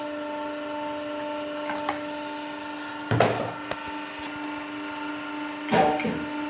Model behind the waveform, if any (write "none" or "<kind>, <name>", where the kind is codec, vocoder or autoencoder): none